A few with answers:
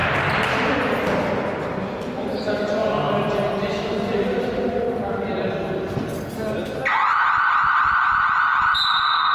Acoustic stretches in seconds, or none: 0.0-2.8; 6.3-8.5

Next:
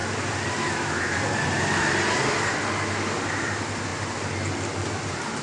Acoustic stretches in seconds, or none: 0.0-5.4

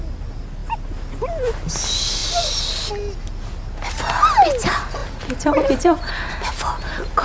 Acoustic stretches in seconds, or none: 0.0-2.2; 2.8-5.0; 6.3-7.2